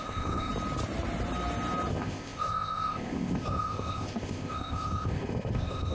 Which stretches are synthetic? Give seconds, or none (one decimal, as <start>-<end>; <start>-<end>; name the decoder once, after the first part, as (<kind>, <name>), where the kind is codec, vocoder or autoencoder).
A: 0.0-0.5 (codec, ZipCodec); 1.9-5.9

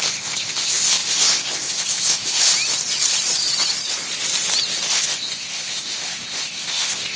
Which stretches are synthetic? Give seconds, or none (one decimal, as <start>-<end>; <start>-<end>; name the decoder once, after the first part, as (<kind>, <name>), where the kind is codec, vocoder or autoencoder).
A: 0.0-2.5 (codec, ZipCodec); 4.9-7.2

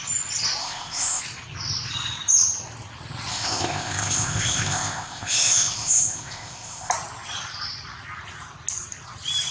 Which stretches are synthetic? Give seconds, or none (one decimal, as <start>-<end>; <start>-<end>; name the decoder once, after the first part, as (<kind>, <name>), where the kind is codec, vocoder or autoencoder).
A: 0.6-1.2 (codec, ZipCodec); 3.3-6.9

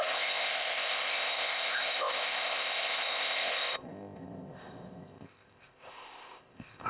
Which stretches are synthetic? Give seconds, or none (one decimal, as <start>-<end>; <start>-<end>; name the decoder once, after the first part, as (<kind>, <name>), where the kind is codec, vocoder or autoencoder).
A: 0.0-6.9 (codec, ZipCodec)

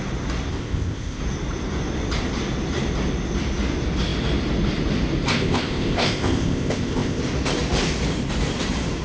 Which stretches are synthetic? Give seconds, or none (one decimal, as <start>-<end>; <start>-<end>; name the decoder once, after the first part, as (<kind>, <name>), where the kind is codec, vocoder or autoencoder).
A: 0.5-1.2 (codec, ZipCodec); 5.3-7.2

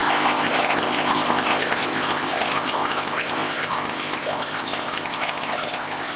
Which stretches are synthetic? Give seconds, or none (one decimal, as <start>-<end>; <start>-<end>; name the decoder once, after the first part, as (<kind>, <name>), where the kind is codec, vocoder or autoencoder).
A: 0.0-6.2 (codec, ZipCodec)

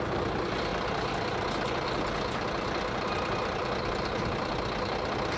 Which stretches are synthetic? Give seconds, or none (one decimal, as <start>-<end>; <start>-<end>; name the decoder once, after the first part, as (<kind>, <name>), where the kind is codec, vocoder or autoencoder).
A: none